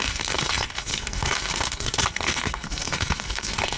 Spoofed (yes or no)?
yes